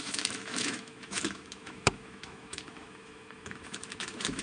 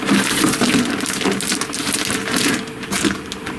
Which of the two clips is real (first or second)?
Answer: second